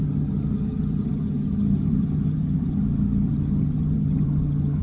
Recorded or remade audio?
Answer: remade